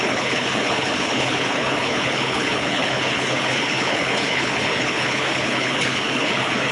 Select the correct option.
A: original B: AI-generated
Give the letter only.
B